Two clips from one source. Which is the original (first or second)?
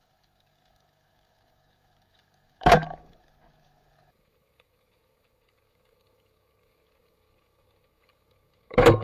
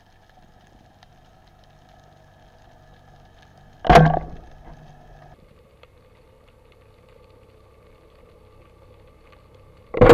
second